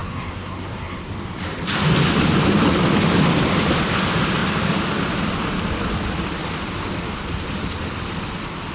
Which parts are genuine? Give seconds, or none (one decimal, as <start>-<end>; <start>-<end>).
1.1-8.7